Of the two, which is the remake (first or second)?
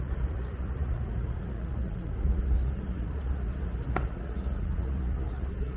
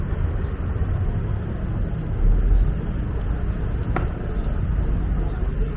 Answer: first